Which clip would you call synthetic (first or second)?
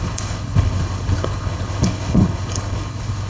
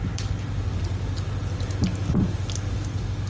first